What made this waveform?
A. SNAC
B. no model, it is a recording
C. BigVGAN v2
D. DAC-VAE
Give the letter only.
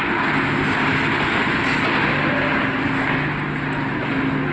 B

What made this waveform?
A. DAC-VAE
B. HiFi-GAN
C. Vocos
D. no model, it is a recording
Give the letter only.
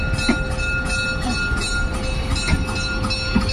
D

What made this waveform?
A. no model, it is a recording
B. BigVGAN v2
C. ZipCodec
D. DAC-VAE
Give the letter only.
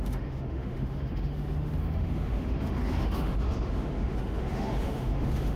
D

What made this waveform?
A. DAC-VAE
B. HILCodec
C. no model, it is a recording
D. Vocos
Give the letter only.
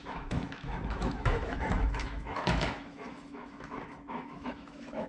A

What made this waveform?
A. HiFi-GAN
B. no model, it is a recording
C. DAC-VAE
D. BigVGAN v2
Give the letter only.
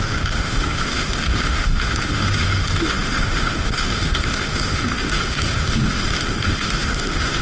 C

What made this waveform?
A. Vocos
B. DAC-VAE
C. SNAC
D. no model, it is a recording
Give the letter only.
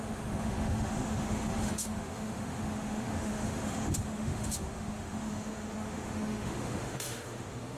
B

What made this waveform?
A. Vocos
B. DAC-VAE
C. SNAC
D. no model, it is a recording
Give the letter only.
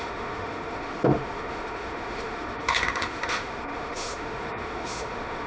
B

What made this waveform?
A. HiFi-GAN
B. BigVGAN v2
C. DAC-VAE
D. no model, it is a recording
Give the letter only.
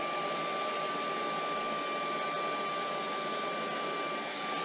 D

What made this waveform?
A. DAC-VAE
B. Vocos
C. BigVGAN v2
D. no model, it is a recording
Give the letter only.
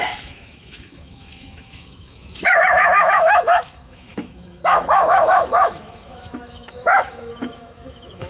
A